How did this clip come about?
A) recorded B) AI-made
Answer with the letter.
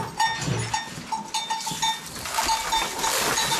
A